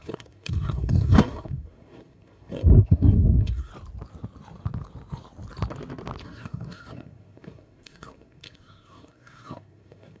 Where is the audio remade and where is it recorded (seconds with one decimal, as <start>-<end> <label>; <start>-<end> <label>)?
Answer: 0.0-3.7 remade; 3.7-6.2 recorded; 6.2-10.2 remade